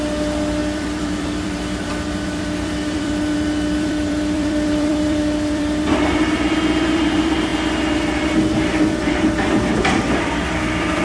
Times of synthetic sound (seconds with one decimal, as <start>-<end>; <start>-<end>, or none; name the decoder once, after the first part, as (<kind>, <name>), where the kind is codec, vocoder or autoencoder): 0.0-7.5 (vocoder, BigVGAN v2); 8.2-11.0